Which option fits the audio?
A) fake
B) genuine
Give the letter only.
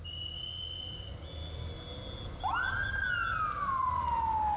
B